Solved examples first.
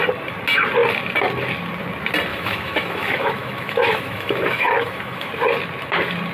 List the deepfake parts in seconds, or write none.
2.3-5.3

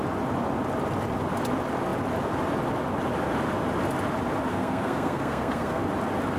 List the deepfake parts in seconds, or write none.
4.5-5.8

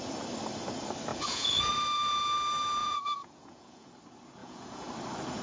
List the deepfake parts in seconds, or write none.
1.1-1.7; 2.8-3.9; 4.4-4.9

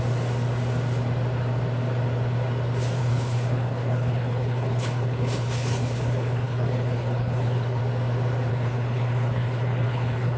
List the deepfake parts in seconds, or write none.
3.0-7.8; 8.5-10.4

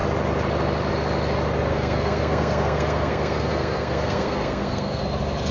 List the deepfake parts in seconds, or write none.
1.7-5.0

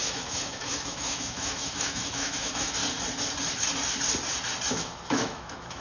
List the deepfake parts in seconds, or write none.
0.0-2.8; 4.7-5.8